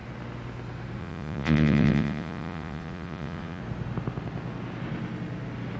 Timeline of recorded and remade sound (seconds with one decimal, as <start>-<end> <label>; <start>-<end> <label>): 0.0-1.0 recorded; 1.0-3.6 remade; 3.6-5.8 recorded